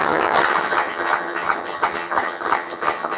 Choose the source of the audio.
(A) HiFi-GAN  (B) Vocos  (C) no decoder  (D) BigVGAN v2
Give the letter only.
A